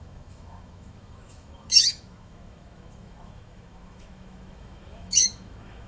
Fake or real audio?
fake